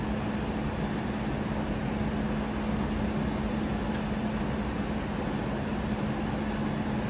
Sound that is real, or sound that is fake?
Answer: real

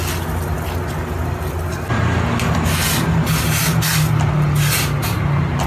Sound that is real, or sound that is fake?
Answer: real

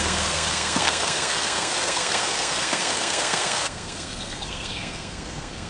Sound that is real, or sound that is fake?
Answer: fake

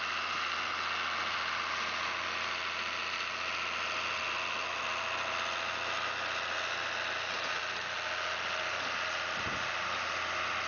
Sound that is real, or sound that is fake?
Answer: real